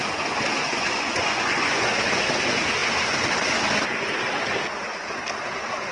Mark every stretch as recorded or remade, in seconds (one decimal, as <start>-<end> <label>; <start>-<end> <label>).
0.0-0.6 recorded; 0.6-2.2 remade; 2.2-5.9 recorded